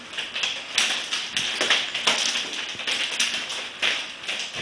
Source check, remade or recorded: recorded